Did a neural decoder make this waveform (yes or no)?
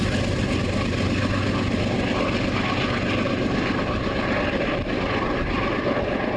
no